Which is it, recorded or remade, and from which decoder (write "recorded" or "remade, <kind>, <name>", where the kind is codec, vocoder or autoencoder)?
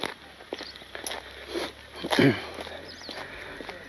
recorded